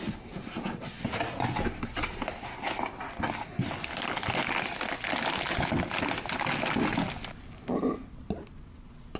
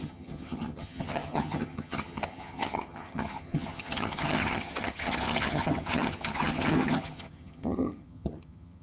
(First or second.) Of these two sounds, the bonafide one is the first